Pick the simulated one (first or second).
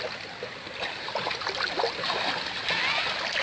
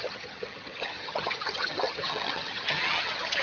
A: second